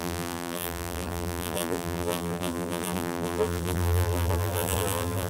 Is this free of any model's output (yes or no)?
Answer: no